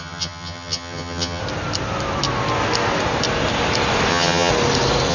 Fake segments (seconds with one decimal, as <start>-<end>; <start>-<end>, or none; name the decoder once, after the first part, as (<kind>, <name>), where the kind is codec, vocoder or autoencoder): 0.0-1.4 (vocoder, HiFi-GAN); 4.1-4.5

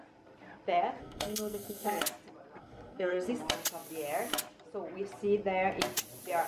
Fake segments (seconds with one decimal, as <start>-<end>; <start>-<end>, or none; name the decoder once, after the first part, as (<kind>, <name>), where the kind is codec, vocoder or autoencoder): 1.0-2.0 (codec, SNAC); 2.6-3.3